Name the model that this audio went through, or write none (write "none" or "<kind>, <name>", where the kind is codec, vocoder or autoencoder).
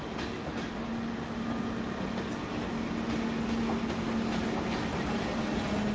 none